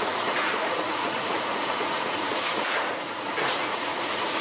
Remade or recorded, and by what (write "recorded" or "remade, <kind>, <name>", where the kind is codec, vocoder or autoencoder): remade, vocoder, Vocos